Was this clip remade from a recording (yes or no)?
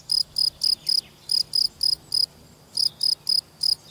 no